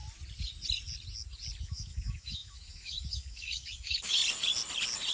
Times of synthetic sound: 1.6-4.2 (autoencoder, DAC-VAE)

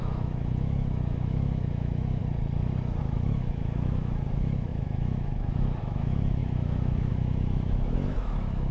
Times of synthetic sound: 0.0-2.2 (autoencoder, DAC-VAE); 3.0-8.7